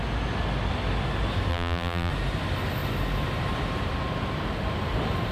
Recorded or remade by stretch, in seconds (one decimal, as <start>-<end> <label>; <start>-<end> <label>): 0.0-1.5 recorded; 1.5-2.1 remade; 2.1-5.3 recorded